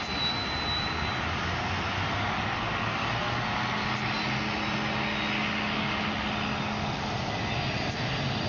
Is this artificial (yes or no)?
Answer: no